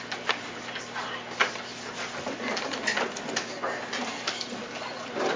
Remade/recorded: recorded